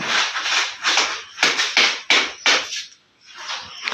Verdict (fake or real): real